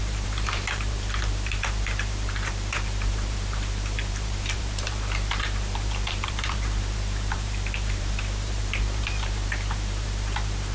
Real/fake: fake